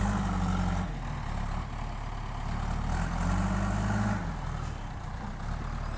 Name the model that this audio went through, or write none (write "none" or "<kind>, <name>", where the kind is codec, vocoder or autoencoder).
none